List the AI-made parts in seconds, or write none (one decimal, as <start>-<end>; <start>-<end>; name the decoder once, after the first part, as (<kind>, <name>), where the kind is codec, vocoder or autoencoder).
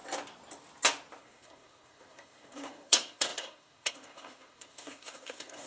1.2-5.7 (codec, SNAC)